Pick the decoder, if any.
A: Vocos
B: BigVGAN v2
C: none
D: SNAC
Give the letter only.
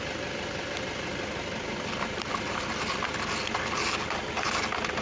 C